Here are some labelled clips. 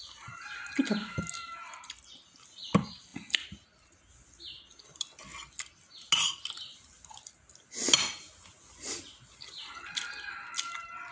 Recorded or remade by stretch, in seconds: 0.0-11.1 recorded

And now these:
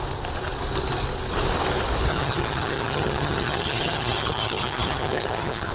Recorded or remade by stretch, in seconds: 0.0-2.1 recorded; 2.1-5.7 remade

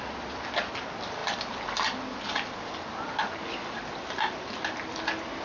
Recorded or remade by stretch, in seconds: 0.0-5.4 recorded